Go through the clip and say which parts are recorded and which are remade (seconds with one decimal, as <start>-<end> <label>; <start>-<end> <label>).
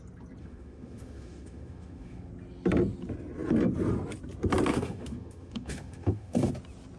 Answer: 0.0-0.4 recorded; 0.4-2.3 remade; 2.3-4.7 recorded; 4.7-6.5 remade; 6.5-7.0 recorded